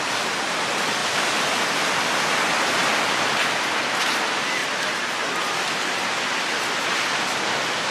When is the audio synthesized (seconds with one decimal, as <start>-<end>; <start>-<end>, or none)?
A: 1.0-1.9; 4.6-5.4